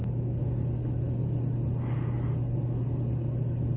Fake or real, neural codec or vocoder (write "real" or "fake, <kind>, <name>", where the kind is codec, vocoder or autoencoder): real